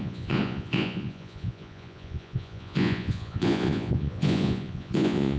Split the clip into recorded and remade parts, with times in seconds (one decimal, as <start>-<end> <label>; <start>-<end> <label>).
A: 0.0-5.4 remade